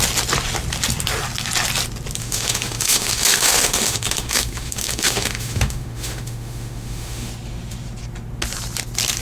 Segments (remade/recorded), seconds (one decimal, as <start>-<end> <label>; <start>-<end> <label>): 0.0-2.2 recorded; 2.2-7.3 remade; 7.3-9.2 recorded